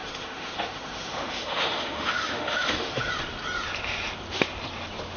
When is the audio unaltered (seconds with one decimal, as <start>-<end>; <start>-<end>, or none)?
3.1-5.2